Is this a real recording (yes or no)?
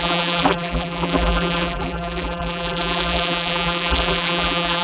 no